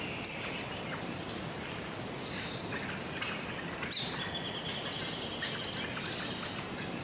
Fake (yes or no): no